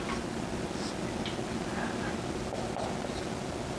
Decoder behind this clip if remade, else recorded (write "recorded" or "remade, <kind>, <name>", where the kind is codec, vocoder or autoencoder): recorded